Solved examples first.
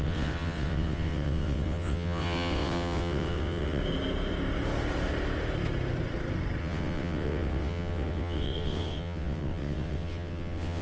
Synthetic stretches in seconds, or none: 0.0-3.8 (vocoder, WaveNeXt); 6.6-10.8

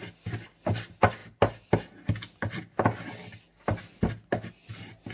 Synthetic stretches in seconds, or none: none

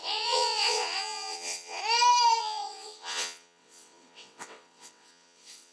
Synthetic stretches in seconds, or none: 0.0-1.8 (vocoder, WaveNeXt); 2.4-5.7